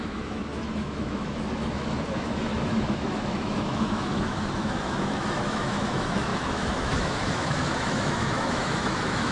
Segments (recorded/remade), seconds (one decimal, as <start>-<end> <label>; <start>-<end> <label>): 0.0-9.3 remade